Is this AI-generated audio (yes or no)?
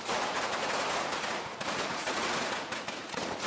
yes